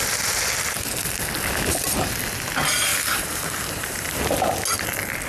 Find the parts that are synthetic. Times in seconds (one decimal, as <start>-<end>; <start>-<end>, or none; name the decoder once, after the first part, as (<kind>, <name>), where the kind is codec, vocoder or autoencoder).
2.9-4.2 (vocoder, BigVGAN v2)